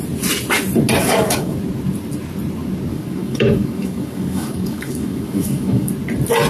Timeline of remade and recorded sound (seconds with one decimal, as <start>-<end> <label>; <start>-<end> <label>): 0.0-1.0 recorded; 1.0-1.6 remade; 1.6-2.9 recorded; 2.9-5.9 remade; 5.9-6.5 recorded